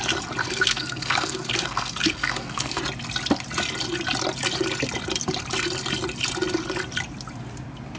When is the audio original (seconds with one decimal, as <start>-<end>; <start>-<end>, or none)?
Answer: 0.0-0.4; 2.8-8.0